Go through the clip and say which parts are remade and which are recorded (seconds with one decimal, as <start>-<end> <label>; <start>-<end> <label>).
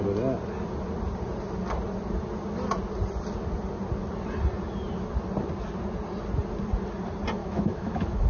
0.0-7.4 recorded; 7.4-8.3 remade